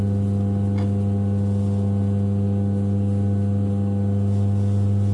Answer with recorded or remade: recorded